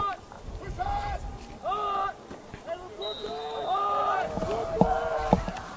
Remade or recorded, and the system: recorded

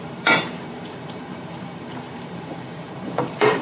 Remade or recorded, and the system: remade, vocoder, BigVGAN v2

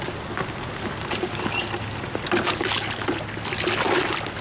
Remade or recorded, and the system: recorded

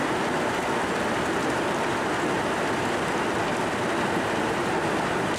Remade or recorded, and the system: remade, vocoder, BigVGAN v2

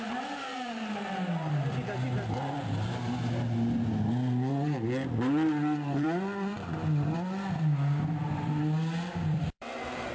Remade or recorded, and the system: remade, vocoder, BigVGAN v2